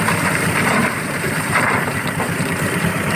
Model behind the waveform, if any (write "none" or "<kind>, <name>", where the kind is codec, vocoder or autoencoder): vocoder, BigVGAN v2